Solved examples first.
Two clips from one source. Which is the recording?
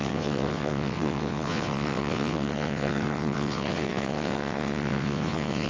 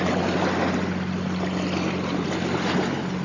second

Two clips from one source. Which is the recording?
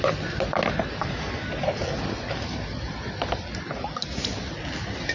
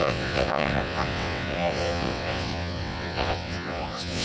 first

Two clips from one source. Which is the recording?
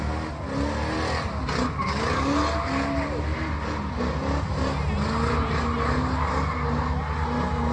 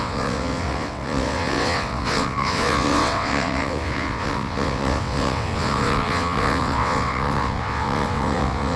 first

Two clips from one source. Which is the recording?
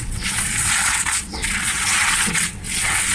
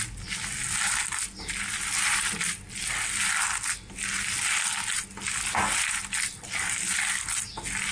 second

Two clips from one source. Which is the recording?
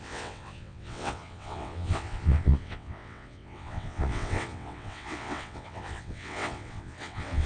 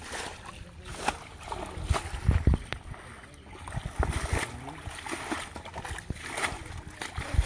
second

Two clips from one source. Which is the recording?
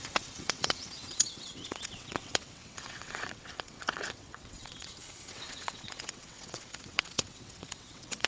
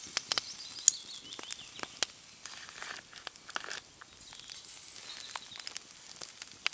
second